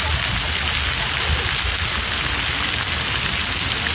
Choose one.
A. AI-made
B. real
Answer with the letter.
B